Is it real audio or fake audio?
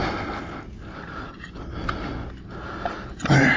real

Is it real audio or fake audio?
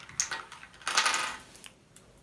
real